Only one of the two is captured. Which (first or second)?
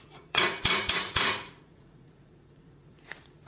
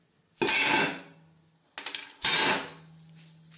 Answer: second